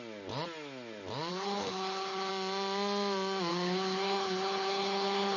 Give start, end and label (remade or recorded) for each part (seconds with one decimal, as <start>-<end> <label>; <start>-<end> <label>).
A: 0.0-1.3 recorded; 1.3-2.3 remade; 2.3-3.5 recorded; 3.5-5.4 remade